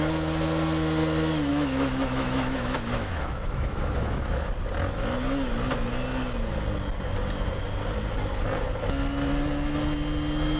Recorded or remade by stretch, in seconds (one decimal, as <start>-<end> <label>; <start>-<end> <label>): 0.0-1.5 recorded; 1.5-4.5 remade; 4.5-10.6 recorded